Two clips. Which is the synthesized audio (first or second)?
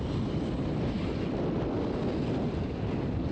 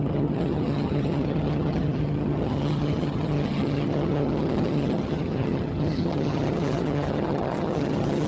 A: second